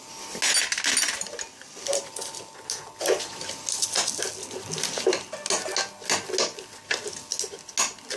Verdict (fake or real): real